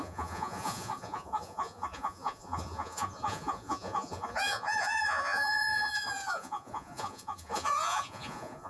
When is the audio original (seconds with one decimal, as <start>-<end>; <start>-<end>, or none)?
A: none